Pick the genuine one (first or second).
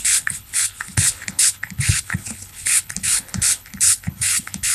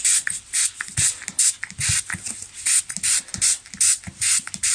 second